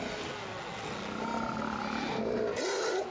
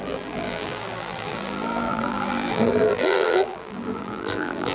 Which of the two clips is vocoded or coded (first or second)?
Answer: second